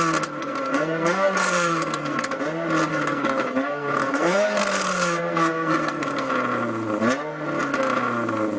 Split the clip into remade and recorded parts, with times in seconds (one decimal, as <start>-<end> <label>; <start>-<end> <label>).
0.0-0.4 recorded; 0.4-2.4 remade; 2.4-2.9 recorded; 2.9-6.3 remade; 6.3-8.6 recorded